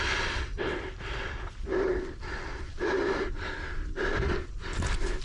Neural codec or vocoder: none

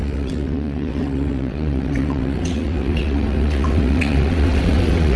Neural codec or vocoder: vocoder, WaveNeXt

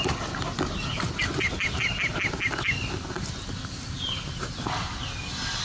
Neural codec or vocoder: none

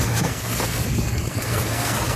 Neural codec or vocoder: codec, SNAC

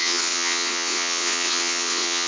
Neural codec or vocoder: vocoder, WaveNeXt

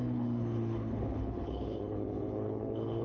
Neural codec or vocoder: codec, HILCodec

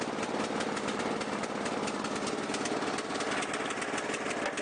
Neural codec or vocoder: none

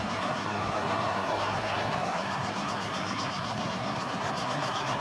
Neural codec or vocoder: codec, SNAC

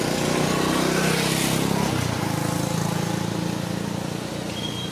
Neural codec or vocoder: none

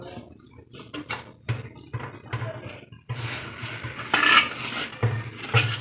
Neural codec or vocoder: none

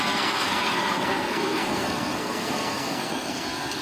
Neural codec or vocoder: codec, SNAC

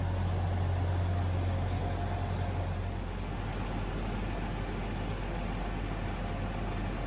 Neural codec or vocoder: none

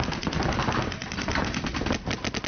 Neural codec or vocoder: none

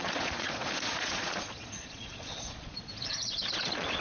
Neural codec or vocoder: vocoder, Vocos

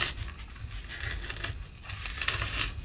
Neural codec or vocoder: none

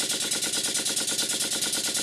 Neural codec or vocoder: none